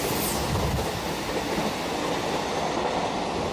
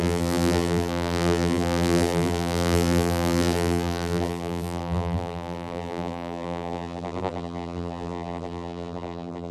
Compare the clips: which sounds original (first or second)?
first